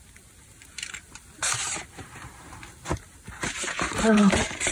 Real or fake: fake